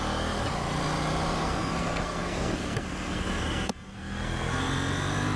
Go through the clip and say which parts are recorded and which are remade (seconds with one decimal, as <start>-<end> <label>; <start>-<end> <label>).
0.0-1.4 recorded; 1.4-4.6 remade; 4.6-5.4 recorded